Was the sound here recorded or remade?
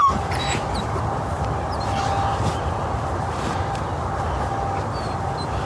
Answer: recorded